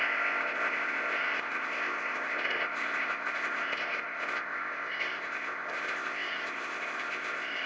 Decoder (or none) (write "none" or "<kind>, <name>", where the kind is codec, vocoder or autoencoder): codec, ZipCodec